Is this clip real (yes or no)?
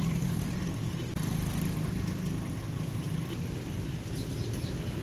yes